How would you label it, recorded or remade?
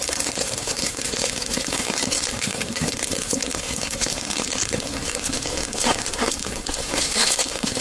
remade